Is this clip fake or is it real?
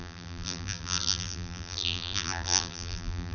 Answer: fake